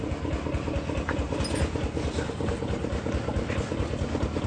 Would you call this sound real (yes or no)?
yes